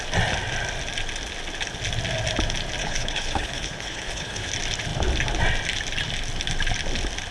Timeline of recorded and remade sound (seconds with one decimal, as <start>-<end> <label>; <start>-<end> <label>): 0.0-2.8 recorded; 2.8-4.5 remade; 4.5-7.3 recorded